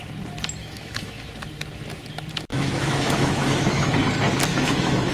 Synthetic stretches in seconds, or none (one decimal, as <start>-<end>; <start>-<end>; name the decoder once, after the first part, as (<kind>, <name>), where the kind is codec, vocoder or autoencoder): 0.6-1.3 (autoencoder, DAC-VAE); 2.5-3.9; 4.5-5.1